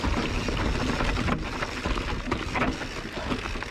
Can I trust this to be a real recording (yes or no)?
yes